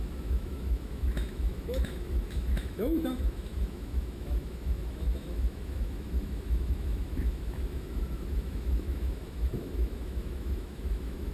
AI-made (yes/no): yes